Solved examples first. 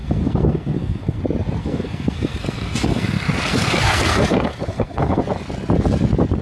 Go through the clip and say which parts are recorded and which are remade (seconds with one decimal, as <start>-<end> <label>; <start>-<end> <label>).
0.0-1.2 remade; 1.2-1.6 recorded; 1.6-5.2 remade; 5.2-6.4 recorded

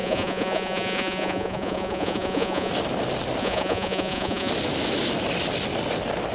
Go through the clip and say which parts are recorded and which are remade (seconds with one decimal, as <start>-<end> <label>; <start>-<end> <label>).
0.0-2.7 remade; 2.7-3.4 recorded; 3.4-4.5 remade; 4.5-6.3 recorded

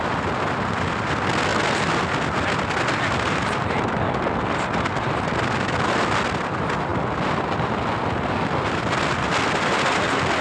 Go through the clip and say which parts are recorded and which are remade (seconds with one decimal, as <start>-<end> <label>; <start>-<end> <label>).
0.0-10.4 recorded

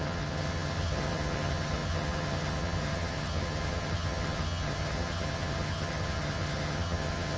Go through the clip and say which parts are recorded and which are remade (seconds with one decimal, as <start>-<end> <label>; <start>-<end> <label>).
0.0-7.4 remade

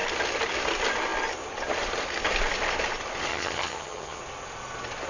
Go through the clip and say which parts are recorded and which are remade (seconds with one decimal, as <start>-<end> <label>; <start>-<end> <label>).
0.0-3.3 recorded; 3.3-4.2 remade; 4.2-5.1 recorded

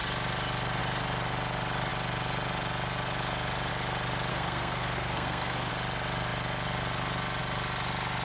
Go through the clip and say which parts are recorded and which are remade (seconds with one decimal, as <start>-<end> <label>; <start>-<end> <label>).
0.0-4.3 recorded; 4.3-5.7 remade; 5.7-8.2 recorded